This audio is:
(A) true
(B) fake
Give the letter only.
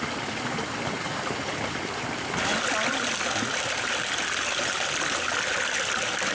A